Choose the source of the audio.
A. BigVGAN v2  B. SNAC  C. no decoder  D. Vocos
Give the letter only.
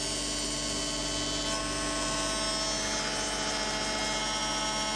C